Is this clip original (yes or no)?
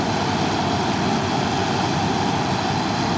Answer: yes